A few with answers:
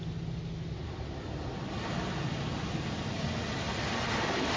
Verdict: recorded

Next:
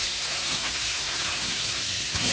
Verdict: remade